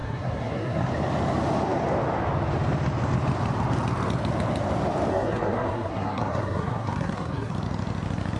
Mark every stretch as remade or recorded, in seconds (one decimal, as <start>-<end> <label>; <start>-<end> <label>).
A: 0.0-0.9 remade; 0.9-5.1 recorded; 5.1-7.5 remade; 7.5-8.4 recorded